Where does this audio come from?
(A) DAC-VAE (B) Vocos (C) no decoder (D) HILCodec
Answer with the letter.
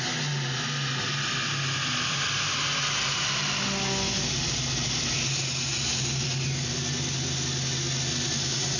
C